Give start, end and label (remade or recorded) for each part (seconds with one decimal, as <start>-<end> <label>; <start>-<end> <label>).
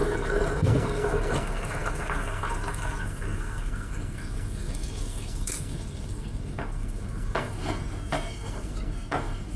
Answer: 0.0-9.6 remade